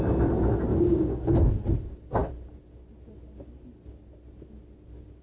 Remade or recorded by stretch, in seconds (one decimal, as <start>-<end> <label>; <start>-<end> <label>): 0.0-0.7 recorded; 0.7-1.3 remade; 1.3-5.2 recorded